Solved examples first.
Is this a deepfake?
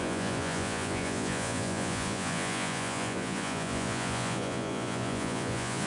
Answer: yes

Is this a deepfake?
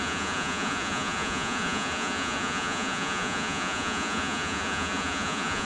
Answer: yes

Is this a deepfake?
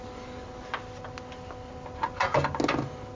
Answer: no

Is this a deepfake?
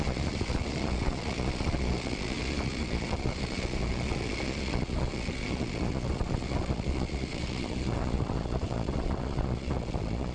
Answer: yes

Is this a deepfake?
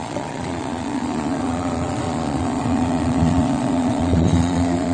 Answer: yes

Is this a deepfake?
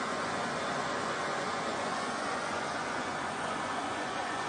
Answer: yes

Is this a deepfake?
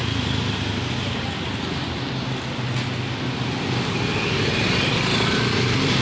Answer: no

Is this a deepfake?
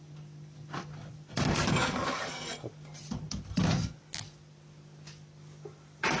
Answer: no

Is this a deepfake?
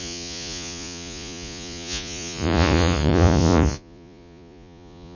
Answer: yes